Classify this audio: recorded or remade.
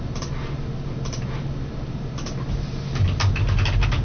recorded